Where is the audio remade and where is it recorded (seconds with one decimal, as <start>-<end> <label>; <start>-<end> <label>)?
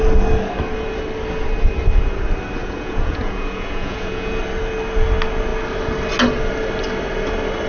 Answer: 0.0-2.6 recorded; 2.6-4.4 remade; 4.4-7.7 recorded